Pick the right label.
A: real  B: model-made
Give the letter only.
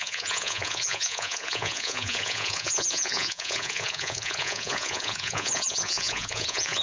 B